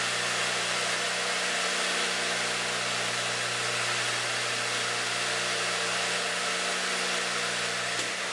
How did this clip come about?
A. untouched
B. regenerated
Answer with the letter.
A